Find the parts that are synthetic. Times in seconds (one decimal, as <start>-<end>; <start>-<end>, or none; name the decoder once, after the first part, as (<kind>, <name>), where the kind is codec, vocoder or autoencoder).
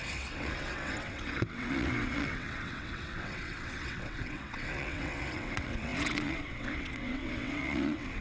0.0-8.2 (vocoder, WaveNeXt)